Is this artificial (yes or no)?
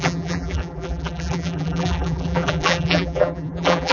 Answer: yes